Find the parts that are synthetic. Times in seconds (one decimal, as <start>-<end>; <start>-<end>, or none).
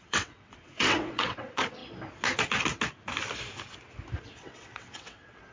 0.0-1.8; 4.2-5.5